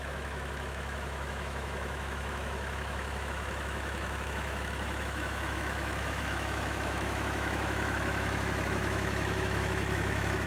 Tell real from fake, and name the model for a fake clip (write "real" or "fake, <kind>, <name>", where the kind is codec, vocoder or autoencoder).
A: fake, autoencoder, DAC-VAE